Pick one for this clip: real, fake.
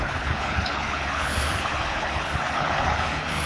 fake